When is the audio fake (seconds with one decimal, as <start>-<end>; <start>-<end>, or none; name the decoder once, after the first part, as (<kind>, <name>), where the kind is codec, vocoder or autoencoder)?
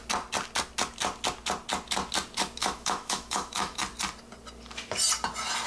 2.6-3.8 (autoencoder, DAC-VAE)